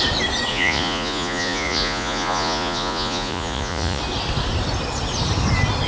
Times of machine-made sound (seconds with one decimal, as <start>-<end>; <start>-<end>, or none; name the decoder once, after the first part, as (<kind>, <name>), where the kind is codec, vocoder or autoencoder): 0.5-4.0 (vocoder, Vocos)